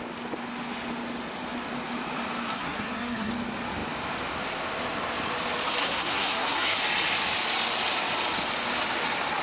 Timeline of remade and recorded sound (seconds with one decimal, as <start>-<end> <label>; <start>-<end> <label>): 0.0-2.5 recorded; 2.5-3.3 remade; 3.3-5.8 recorded; 5.8-6.8 remade; 6.8-9.4 recorded